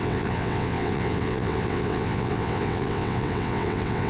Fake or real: fake